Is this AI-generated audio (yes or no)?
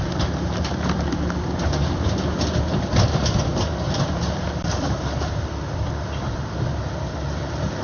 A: yes